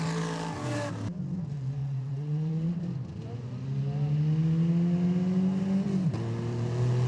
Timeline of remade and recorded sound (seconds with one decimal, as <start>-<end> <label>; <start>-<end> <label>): 0.0-1.8 recorded; 1.8-2.8 remade; 2.8-7.1 recorded